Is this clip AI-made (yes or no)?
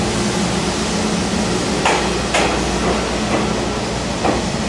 no